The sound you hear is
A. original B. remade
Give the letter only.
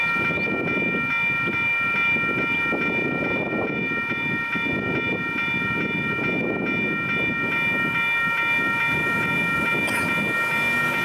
A